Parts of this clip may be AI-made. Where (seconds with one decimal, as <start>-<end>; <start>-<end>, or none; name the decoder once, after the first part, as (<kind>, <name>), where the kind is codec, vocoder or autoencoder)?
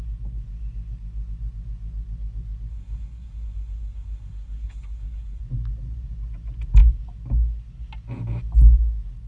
2.7-5.4 (codec, SNAC)